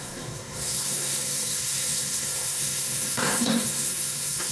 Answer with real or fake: fake